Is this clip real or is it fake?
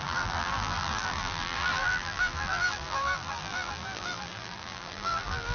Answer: fake